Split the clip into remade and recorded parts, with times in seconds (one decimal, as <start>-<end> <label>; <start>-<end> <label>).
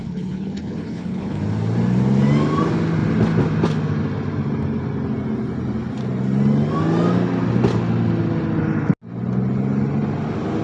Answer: 0.0-1.4 remade; 1.4-10.6 recorded